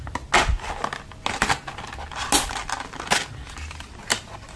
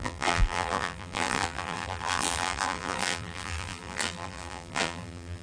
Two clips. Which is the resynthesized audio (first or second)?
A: second